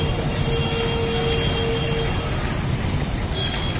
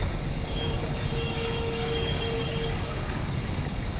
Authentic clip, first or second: first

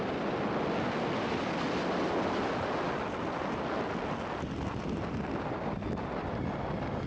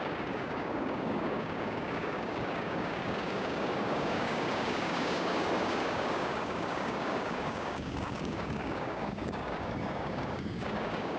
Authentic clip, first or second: first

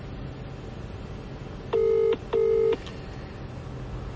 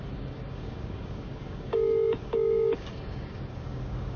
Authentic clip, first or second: first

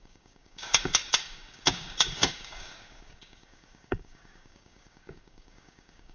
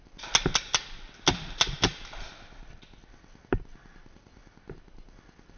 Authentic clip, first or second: second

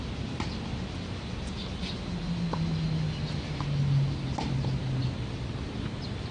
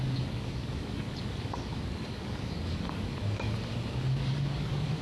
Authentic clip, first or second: first